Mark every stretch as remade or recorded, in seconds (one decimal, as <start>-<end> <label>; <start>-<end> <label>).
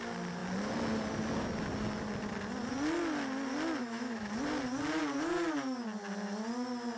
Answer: 0.0-3.8 recorded; 3.8-4.3 remade; 4.3-7.0 recorded